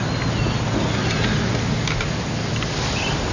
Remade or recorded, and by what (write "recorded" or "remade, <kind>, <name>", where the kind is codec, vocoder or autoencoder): recorded